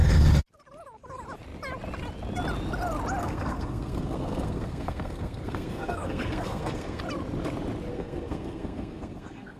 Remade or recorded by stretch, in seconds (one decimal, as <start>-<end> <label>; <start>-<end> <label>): 0.0-3.2 recorded; 3.2-7.0 remade; 7.0-7.9 recorded; 7.9-9.6 remade